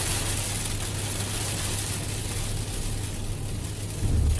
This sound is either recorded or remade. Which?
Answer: recorded